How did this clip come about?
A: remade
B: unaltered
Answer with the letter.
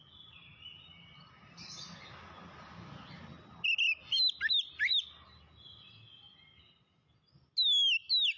B